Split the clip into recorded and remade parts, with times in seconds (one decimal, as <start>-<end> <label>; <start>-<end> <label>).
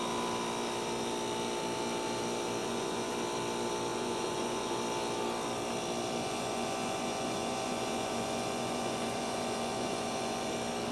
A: 0.0-2.6 recorded; 2.6-3.1 remade; 3.1-3.9 recorded; 3.9-4.8 remade; 4.8-6.2 recorded; 6.2-10.5 remade; 10.5-10.9 recorded